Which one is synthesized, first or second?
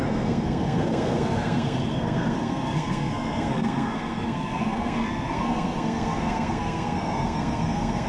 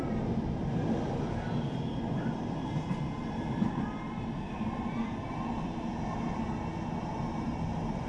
first